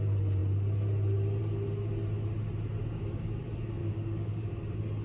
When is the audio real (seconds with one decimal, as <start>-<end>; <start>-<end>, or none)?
0.0-2.8; 3.4-3.8; 4.5-5.0